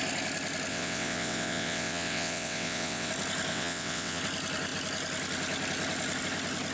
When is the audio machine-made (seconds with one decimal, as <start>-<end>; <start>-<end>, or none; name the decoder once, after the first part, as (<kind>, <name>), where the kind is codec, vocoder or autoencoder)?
0.7-3.1 (vocoder, WaveNeXt); 3.5-4.2

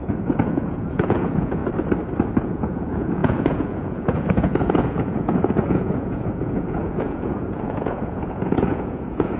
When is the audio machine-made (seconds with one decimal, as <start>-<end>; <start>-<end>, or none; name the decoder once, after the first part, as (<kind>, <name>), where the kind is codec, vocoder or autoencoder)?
0.0-1.6 (vocoder, Vocos); 2.4-9.4

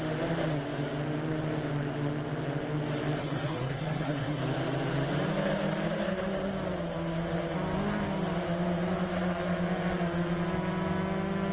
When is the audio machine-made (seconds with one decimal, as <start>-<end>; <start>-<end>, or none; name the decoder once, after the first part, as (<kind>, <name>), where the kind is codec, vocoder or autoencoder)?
3.2-4.4 (codec, SNAC)